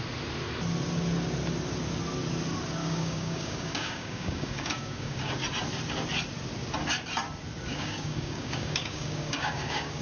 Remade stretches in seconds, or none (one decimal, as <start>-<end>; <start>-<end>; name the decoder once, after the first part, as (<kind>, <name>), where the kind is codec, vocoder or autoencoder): 2.8-5.3 (codec, DAC); 7.7-10.0